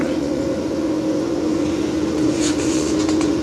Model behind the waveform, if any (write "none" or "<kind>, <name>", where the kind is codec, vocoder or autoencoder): vocoder, Vocos